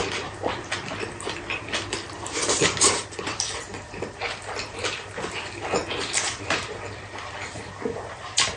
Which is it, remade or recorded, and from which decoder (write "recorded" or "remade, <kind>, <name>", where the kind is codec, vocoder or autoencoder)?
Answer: remade, vocoder, BigVGAN v2